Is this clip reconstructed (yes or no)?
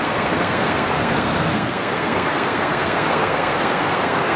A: yes